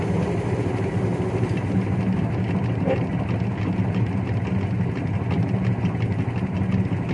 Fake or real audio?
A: real